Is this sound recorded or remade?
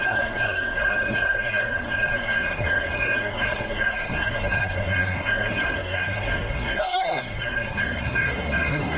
remade